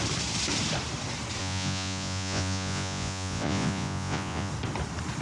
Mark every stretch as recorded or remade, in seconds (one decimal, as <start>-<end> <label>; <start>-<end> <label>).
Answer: 0.0-1.4 recorded; 1.4-4.5 remade; 4.5-5.2 recorded